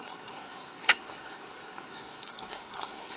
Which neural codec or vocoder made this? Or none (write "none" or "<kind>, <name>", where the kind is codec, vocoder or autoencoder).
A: codec, SNAC